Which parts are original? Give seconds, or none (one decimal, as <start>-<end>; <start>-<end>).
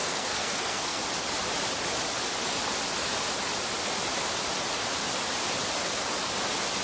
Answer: 1.0-6.8